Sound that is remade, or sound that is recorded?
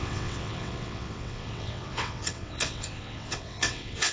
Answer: remade